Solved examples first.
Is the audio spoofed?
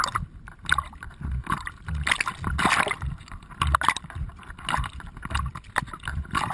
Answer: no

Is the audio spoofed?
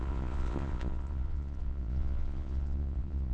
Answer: yes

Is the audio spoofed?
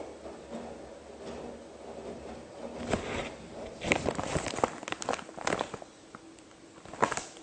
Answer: no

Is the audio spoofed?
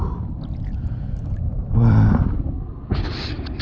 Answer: no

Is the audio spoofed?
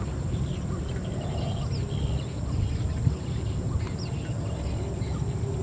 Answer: no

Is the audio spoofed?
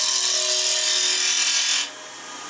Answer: no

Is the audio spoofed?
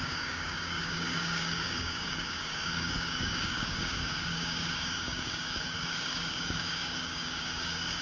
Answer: yes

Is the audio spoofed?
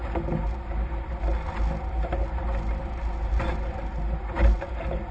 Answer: no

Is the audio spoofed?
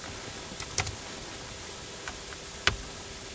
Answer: no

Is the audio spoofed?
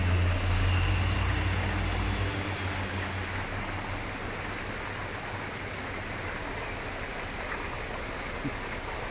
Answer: no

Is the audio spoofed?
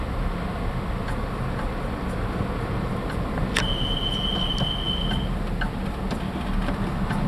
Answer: no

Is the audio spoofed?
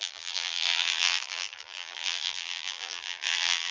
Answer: yes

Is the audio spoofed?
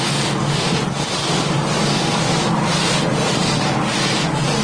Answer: no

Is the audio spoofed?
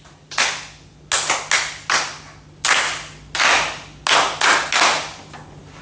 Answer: no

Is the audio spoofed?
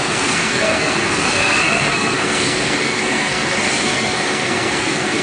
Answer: yes